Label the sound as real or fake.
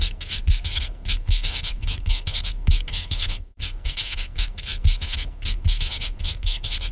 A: fake